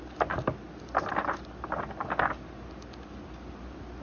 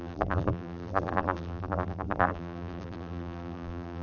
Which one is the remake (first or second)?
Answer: second